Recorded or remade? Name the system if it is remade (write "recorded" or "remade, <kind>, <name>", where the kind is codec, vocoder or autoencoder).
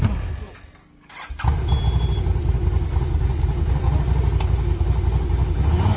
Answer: recorded